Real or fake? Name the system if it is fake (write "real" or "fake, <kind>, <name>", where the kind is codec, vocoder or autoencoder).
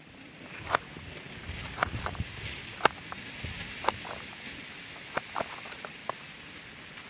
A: real